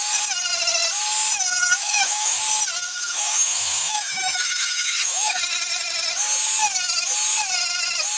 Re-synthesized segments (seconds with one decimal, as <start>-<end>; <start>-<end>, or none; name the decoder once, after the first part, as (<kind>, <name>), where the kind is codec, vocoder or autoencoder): 1.8-2.4 (autoencoder, DAC-VAE); 2.9-5.4